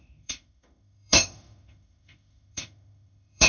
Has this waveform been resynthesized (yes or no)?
yes